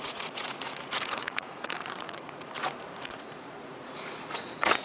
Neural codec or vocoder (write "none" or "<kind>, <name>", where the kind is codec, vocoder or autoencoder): vocoder, Vocos